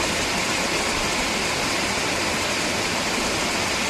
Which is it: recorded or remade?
recorded